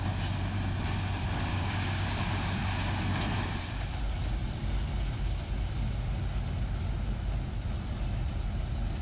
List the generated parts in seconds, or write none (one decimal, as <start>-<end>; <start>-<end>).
1.5-2.6